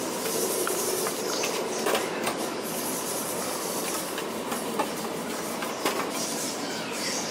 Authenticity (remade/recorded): remade